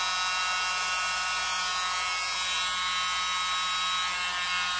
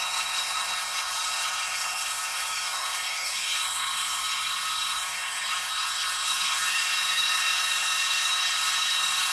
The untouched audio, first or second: first